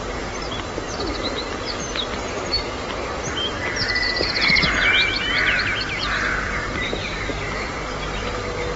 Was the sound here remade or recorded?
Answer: recorded